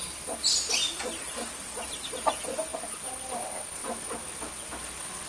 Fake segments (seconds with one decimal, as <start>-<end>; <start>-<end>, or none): none